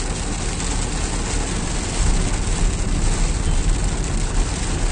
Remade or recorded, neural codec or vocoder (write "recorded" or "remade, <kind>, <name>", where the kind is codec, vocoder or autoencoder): recorded